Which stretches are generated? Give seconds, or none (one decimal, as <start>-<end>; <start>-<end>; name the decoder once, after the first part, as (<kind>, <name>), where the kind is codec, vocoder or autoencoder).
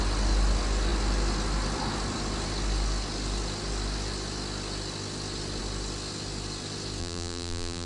7.0-7.9 (vocoder, BigVGAN v2)